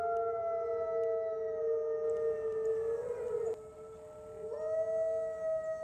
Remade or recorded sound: recorded